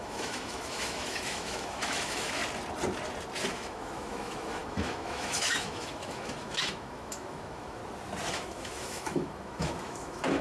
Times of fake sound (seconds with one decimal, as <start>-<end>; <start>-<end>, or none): 0.0-2.4; 3.5-7.8; 8.3-10.4

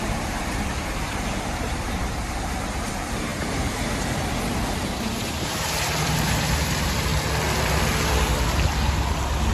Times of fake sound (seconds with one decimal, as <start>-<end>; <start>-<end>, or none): 0.0-7.1

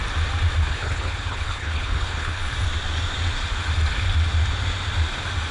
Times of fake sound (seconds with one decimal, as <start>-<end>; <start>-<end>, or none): 0.7-2.4

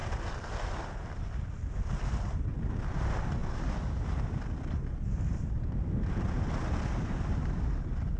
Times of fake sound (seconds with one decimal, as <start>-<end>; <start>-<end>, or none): none

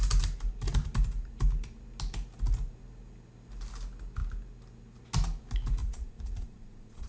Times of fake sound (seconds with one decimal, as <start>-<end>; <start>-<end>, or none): 5.8-7.1

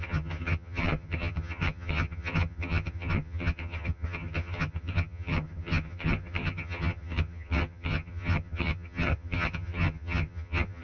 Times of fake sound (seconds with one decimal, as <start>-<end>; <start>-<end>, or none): 0.0-10.8

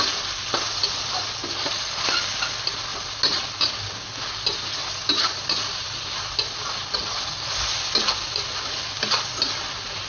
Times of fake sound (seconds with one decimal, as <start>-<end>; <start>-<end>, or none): none

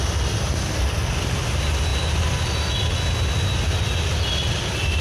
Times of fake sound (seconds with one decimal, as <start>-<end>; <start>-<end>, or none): none